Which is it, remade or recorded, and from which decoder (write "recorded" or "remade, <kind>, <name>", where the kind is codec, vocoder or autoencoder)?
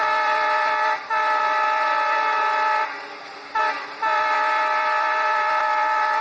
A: remade, vocoder, BigVGAN v2